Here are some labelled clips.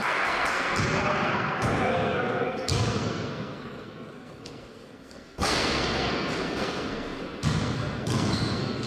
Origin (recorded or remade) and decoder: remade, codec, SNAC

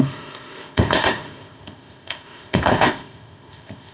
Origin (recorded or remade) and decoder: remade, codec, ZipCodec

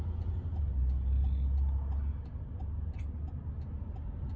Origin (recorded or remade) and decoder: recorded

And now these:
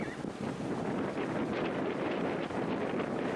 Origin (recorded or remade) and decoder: recorded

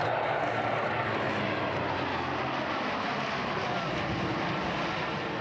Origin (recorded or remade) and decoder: recorded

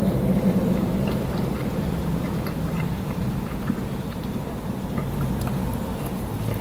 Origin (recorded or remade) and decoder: remade, vocoder, BigVGAN v2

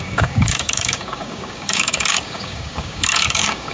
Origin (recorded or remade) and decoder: remade, codec, DAC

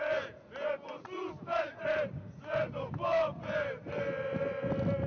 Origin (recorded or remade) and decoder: recorded